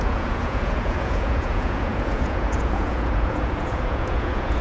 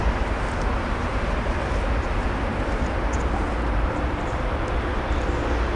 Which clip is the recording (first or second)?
second